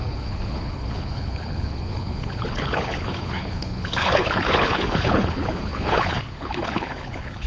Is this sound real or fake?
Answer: fake